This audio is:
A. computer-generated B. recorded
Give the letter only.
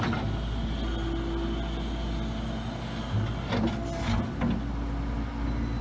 B